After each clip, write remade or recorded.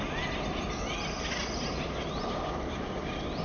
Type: recorded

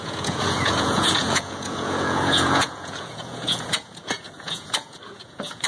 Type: remade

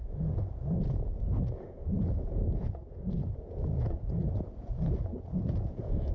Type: remade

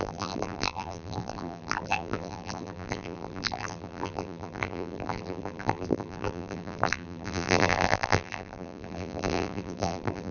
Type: remade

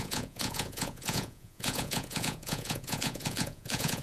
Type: remade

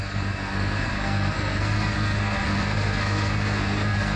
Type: remade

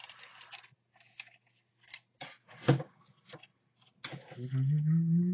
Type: recorded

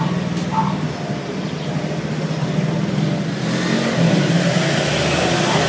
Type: recorded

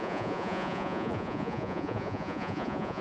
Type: remade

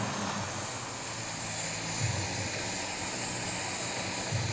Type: recorded